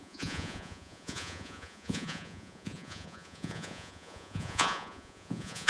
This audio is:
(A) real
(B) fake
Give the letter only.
B